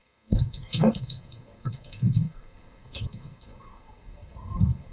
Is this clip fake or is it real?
fake